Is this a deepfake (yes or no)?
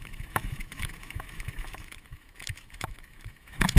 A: yes